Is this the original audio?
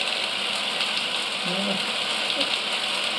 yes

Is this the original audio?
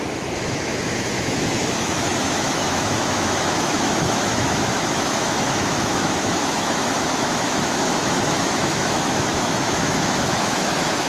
no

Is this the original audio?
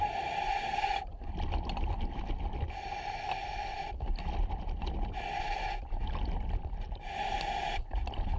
yes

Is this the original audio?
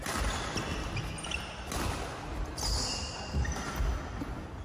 yes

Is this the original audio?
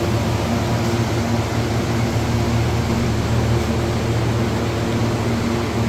yes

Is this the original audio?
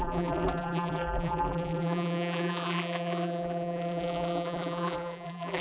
no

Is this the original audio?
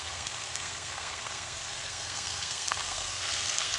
no